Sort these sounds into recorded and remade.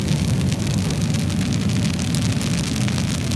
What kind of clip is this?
recorded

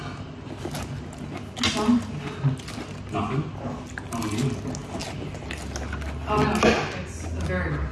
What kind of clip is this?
recorded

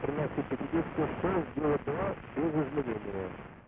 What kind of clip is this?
recorded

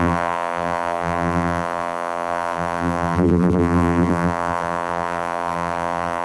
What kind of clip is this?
remade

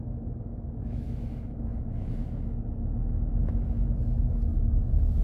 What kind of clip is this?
remade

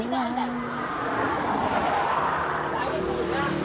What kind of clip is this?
recorded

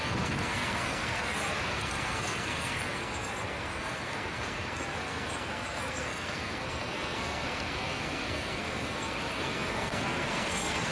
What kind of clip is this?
remade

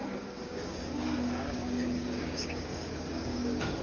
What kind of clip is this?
remade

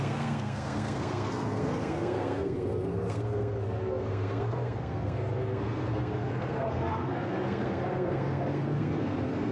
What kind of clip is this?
remade